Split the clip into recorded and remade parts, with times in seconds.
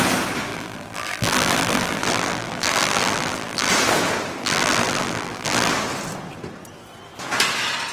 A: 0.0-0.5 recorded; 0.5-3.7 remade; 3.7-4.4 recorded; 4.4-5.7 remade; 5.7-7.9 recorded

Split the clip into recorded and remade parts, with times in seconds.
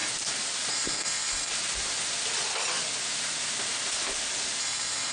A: 0.0-0.7 recorded; 0.7-1.5 remade; 1.5-4.6 recorded; 4.6-5.1 remade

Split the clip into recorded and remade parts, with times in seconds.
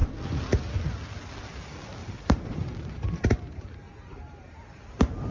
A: 0.0-2.0 recorded; 2.0-5.3 remade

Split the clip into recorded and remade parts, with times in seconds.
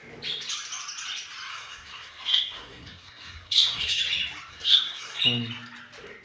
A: 0.0-1.5 recorded; 1.5-4.0 remade; 4.0-4.5 recorded; 4.5-5.2 remade; 5.2-6.2 recorded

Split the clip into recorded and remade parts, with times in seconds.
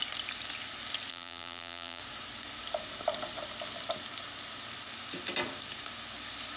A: 0.0-1.1 recorded; 1.1-2.0 remade; 2.0-6.6 recorded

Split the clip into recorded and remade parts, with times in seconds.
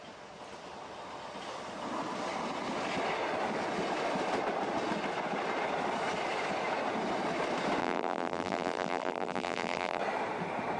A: 0.0-7.8 recorded; 7.8-10.0 remade; 10.0-10.8 recorded